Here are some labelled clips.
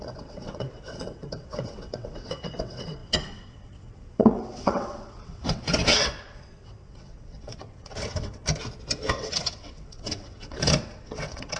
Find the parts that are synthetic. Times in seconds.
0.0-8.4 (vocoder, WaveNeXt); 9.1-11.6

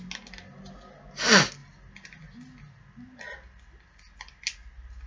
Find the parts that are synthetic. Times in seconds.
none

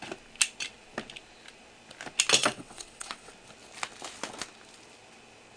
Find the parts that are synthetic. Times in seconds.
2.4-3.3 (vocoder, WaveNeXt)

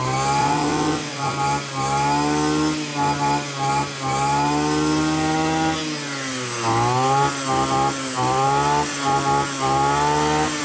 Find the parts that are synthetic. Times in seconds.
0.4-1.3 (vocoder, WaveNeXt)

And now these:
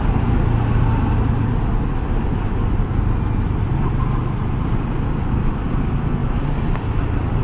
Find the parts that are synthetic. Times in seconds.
none